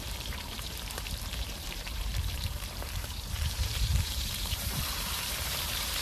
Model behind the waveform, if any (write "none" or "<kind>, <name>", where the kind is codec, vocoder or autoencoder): vocoder, BigVGAN v2